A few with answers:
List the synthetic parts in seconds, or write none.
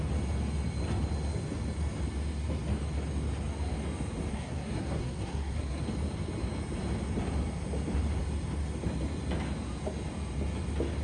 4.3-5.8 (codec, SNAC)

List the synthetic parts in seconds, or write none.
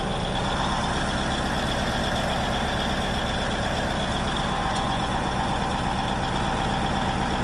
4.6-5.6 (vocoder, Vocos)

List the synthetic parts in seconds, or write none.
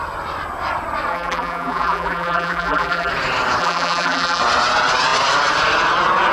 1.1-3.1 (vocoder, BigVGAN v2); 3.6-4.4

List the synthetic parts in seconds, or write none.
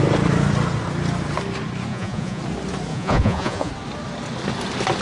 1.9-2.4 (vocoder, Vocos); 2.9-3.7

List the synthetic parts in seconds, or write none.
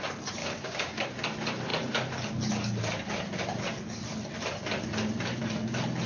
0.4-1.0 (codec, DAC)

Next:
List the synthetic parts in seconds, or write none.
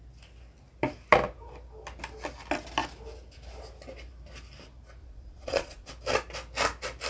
5.0-5.9 (vocoder, Vocos)